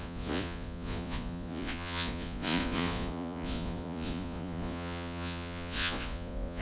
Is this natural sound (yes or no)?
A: no